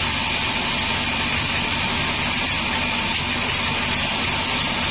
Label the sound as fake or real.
fake